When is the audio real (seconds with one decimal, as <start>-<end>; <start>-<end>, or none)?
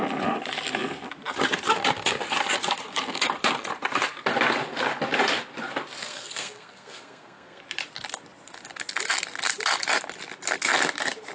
0.0-6.0; 7.6-11.3